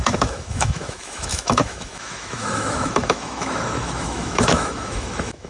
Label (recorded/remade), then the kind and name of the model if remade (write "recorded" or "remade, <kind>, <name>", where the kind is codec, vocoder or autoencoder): remade, autoencoder, DAC-VAE